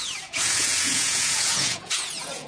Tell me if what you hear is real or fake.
fake